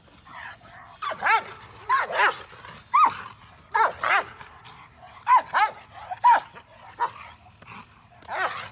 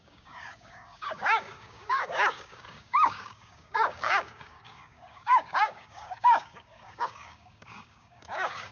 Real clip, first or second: first